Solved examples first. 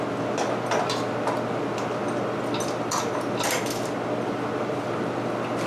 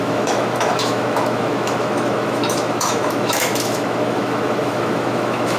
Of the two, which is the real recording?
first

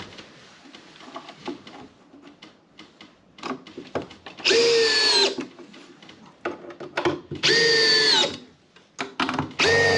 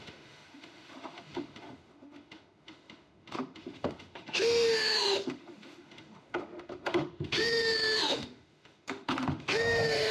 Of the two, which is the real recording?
first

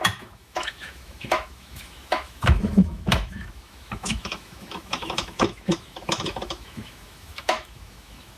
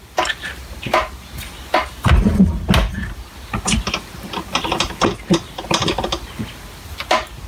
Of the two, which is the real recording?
second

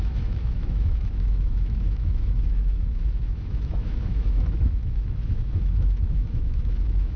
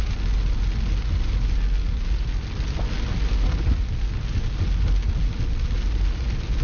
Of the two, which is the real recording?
second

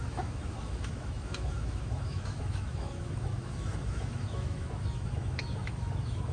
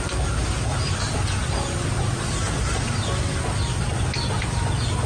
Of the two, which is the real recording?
second